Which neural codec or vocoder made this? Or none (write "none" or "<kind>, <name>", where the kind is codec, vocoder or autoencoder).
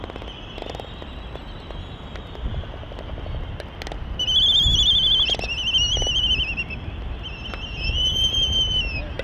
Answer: none